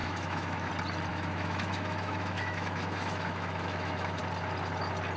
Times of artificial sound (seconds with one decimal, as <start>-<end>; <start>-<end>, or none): 0.0-0.7; 1.1-4.2